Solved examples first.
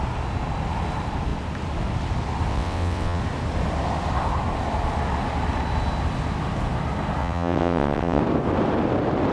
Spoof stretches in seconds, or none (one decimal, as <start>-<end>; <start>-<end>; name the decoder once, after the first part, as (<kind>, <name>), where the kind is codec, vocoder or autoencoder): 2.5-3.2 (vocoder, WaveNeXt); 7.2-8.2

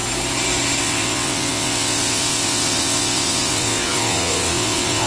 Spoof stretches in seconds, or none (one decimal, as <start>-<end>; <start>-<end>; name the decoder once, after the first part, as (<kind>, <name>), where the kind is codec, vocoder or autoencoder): 0.8-5.1 (vocoder, WaveNeXt)

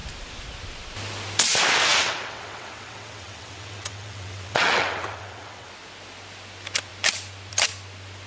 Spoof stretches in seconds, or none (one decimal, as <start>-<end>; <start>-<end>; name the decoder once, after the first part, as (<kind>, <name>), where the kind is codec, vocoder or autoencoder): 1.9-5.7 (vocoder, WaveNeXt)